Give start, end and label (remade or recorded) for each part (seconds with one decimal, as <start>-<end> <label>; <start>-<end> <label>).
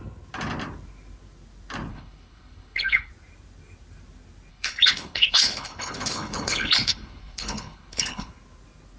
0.0-1.9 recorded; 1.9-3.1 remade; 3.1-4.5 recorded; 4.5-8.3 remade; 8.3-9.0 recorded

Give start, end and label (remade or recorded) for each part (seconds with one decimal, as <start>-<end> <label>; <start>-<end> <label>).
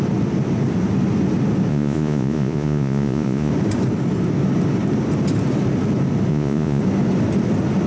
0.0-1.7 recorded; 1.7-3.5 remade; 3.5-6.3 recorded; 6.3-6.8 remade; 6.8-7.9 recorded